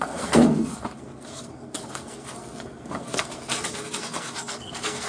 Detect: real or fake fake